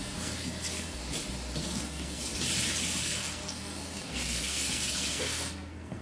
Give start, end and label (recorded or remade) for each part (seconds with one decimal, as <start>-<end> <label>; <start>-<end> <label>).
0.0-1.0 remade; 1.0-1.6 recorded; 1.6-2.3 remade; 2.3-3.0 recorded; 3.0-6.0 remade